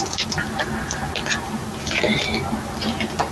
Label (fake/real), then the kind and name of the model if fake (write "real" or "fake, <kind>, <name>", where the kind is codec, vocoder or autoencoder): real